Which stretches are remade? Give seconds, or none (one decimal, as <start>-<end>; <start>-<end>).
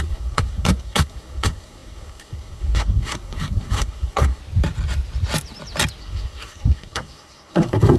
0.0-4.4; 6.0-8.0